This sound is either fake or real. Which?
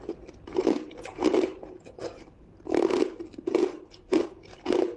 fake